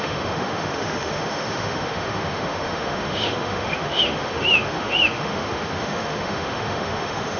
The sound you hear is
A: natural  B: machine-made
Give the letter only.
B